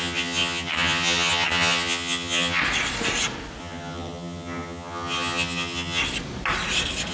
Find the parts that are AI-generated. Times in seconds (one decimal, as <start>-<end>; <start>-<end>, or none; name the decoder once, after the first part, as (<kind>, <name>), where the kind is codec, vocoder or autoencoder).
0.0-2.6 (vocoder, HiFi-GAN); 3.6-6.0